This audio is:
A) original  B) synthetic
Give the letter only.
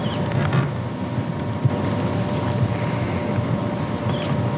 A